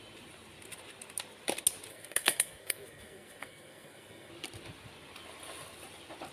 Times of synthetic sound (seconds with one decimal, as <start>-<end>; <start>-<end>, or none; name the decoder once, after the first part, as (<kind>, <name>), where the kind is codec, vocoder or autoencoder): 1.9-4.3 (codec, SNAC)